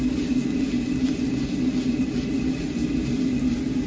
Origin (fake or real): real